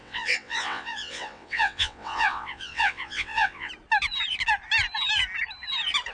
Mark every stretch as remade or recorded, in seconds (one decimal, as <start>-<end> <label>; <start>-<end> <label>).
0.0-3.7 remade; 3.7-6.1 recorded